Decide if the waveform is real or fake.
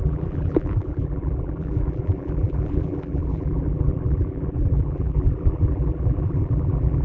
fake